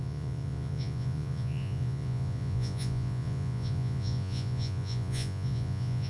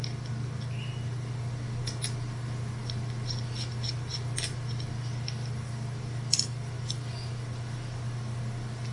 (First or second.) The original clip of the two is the second